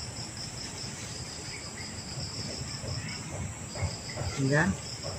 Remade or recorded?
remade